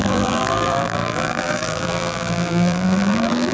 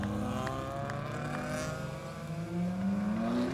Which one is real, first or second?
second